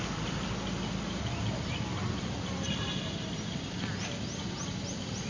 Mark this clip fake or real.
real